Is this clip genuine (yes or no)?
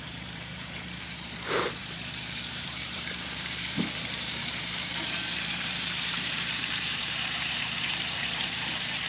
no